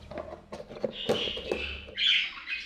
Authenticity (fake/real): real